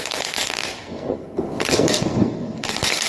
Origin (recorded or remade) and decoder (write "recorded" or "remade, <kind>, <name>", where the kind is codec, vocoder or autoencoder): remade, codec, SNAC